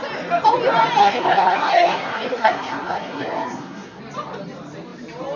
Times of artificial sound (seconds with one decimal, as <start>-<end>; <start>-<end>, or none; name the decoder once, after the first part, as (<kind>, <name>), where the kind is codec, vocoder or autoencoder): 1.0-4.0 (codec, SNAC)

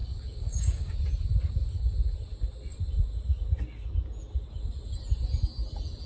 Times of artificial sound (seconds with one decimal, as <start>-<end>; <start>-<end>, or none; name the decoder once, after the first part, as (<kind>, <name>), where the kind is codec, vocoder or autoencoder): 0.0-1.0 (codec, DAC)

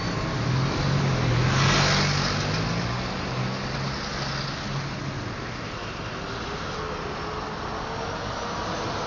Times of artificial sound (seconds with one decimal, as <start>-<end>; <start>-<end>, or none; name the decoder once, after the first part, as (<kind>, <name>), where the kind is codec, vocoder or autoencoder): none

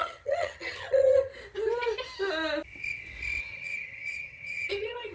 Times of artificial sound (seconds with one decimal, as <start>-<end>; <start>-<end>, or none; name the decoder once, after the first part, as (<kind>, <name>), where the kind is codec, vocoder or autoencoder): 0.0-1.3 (vocoder, HiFi-GAN); 3.4-5.1

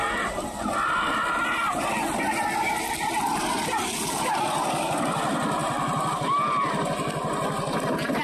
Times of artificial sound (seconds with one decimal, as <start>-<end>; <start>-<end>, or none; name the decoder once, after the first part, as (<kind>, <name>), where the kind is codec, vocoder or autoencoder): none